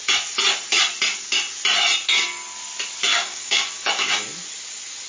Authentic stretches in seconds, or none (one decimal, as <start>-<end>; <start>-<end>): 0.0-3.1; 4.1-5.1